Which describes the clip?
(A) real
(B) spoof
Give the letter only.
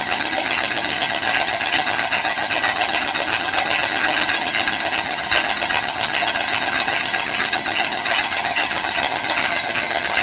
B